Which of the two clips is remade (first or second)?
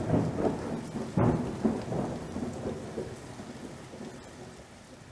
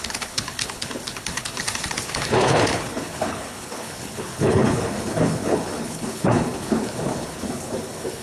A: second